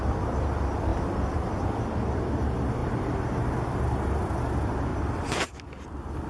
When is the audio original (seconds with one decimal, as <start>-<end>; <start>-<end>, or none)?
0.0-0.9; 2.4-2.8; 3.8-4.9; 5.6-6.3